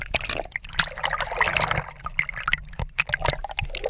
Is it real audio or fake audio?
real